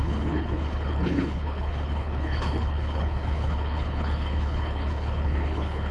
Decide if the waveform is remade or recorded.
remade